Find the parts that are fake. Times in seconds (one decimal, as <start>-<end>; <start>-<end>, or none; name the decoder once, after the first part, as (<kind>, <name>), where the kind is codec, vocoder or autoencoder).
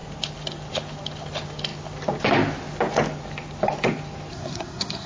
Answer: 4.3-5.1 (codec, SNAC)